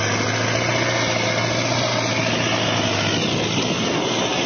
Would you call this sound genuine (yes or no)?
yes